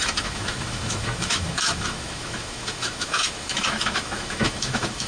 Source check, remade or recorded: remade